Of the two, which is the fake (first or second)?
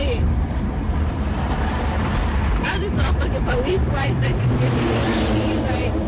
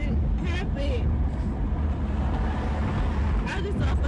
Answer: first